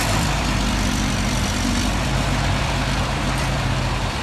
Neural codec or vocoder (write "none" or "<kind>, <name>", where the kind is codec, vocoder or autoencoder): vocoder, BigVGAN v2